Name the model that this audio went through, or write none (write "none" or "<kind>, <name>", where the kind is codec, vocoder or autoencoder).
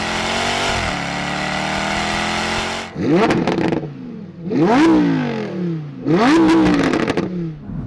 none